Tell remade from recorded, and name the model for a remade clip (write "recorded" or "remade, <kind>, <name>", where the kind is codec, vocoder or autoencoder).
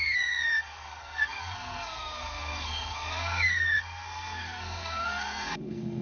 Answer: remade, codec, SNAC